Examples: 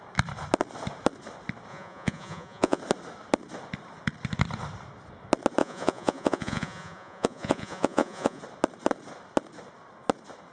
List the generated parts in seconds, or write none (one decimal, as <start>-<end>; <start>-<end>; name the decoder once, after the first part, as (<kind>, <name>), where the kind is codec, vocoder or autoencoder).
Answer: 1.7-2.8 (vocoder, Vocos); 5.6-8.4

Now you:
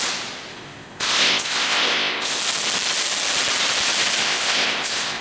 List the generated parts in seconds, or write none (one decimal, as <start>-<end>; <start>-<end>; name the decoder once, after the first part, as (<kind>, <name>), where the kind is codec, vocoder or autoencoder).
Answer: 0.5-2.4 (codec, ZipCodec); 4.2-5.2

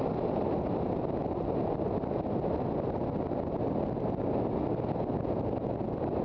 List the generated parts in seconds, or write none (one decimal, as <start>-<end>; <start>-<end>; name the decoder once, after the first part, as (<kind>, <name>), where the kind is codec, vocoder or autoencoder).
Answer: none

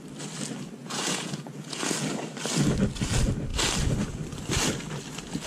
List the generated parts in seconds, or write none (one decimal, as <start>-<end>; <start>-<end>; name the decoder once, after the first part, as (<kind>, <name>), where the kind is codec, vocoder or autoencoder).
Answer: 0.8-1.8 (vocoder, Vocos)